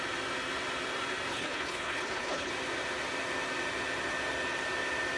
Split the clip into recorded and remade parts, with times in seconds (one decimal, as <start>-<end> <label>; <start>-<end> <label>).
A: 0.0-1.3 recorded; 1.3-2.5 remade; 2.5-5.2 recorded